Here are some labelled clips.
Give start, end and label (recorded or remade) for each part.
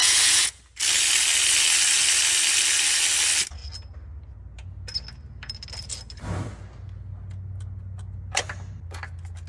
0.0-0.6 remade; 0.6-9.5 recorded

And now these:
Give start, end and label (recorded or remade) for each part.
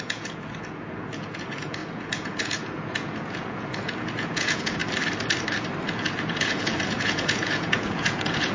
0.0-4.8 remade; 4.8-5.8 recorded; 5.8-8.5 remade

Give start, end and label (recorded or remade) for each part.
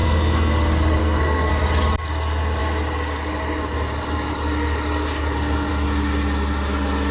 0.0-0.5 remade; 0.5-1.0 recorded; 1.0-1.5 remade; 1.5-7.1 recorded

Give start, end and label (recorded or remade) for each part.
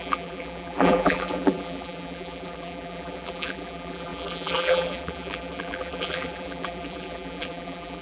0.0-8.0 remade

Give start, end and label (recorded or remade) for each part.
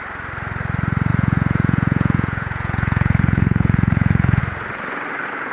0.0-1.1 recorded; 1.1-4.4 remade; 4.4-5.5 recorded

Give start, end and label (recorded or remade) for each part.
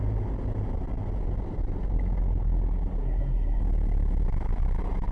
0.0-3.0 recorded; 3.0-3.6 remade; 3.6-5.1 recorded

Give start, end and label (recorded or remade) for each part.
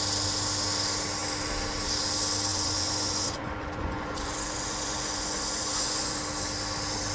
0.0-2.5 recorded; 2.5-6.2 remade; 6.2-7.1 recorded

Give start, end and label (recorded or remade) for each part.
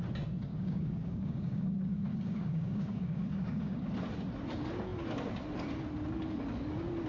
0.0-0.5 recorded; 0.5-3.9 remade; 3.9-7.1 recorded